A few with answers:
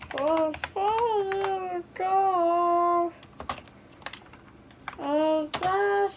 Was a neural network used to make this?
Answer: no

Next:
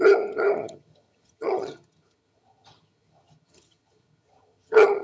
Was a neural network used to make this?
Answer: yes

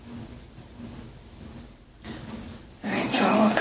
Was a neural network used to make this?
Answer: no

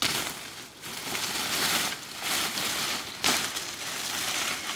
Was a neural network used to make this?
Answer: no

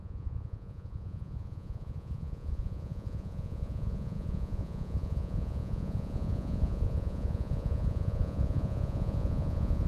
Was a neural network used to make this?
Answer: yes